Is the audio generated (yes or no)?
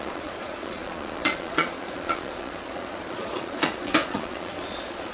yes